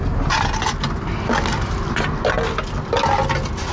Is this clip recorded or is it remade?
recorded